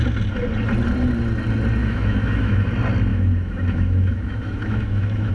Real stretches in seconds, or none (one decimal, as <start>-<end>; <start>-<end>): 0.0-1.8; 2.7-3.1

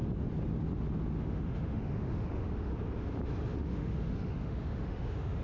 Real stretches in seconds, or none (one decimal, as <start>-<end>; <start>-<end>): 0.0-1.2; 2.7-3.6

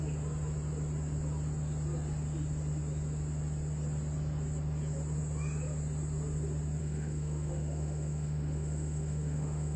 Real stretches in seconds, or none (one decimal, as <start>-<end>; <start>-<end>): 0.0-6.8

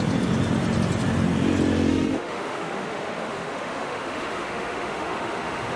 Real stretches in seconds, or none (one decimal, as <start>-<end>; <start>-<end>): 0.0-1.9

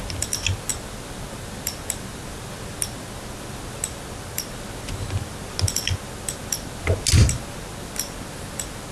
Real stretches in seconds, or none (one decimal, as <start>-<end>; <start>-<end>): 0.0-8.9